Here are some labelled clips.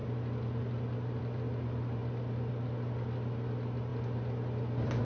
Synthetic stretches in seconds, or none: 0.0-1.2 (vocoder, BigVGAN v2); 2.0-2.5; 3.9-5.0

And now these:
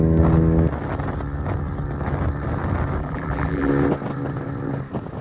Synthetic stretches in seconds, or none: 3.0-3.7 (vocoder, BigVGAN v2)

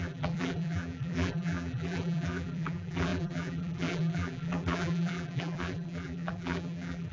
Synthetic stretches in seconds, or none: 0.0-7.1 (vocoder, BigVGAN v2)